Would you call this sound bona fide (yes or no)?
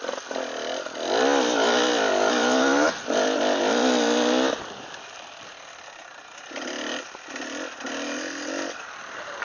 yes